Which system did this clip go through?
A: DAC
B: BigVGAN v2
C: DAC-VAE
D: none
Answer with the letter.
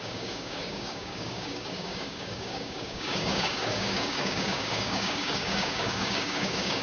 A